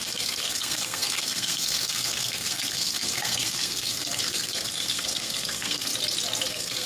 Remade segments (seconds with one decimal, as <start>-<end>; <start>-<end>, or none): 0.0-5.9; 6.5-6.9